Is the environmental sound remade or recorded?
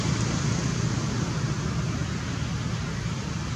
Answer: recorded